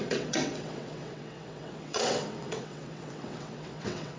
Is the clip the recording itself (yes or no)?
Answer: no